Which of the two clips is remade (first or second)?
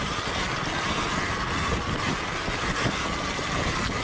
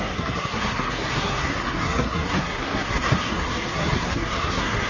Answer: second